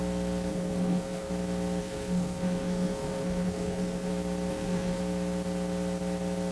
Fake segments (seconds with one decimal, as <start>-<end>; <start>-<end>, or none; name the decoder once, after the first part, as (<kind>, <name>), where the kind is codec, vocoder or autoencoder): 0.5-1.3 (codec, SNAC); 1.8-4.1; 4.5-5.0